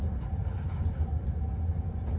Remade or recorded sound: recorded